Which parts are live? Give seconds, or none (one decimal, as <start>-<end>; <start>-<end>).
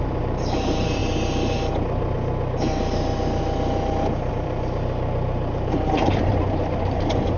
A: 1.0-4.3